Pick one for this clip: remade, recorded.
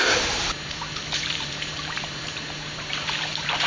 remade